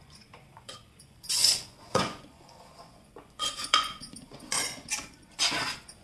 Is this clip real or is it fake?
fake